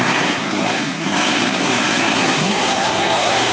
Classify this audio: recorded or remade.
remade